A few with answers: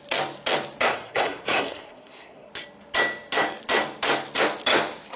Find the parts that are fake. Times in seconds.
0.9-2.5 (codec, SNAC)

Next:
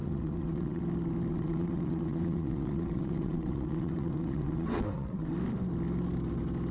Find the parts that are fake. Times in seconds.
0.0-0.8 (vocoder, WaveNeXt); 1.3-5.3

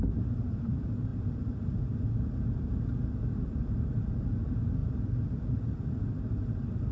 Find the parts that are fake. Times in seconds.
0.0-4.8 (vocoder, BigVGAN v2); 6.3-6.9

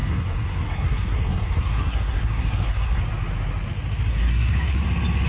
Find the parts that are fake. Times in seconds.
0.0-3.0 (codec, SNAC); 4.1-4.8

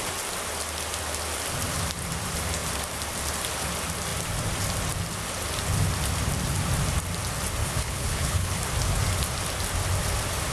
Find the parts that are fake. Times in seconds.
7.6-8.6 (codec, HILCodec)

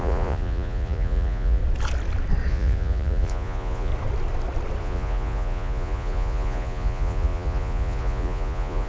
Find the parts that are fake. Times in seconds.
0.0-1.6 (vocoder, Vocos); 2.5-3.9; 4.8-8.9

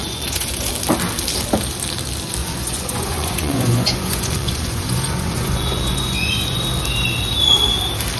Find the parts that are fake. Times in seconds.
0.0-0.7 (vocoder, Vocos); 2.4-6.6